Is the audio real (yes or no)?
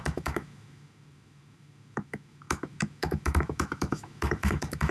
no